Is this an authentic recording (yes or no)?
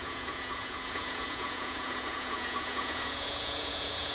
no